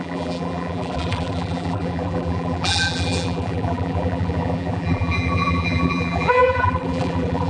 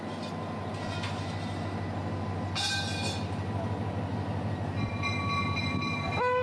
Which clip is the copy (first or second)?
first